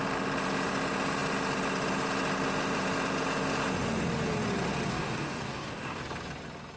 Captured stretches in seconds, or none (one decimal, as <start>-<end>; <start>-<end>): 0.0-4.9; 6.0-6.8